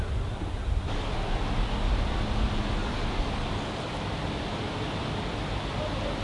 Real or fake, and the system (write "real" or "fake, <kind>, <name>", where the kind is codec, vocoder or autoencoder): real